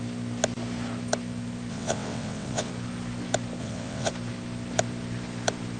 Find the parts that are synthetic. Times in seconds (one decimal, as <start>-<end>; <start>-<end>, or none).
1.7-2.7; 3.6-4.1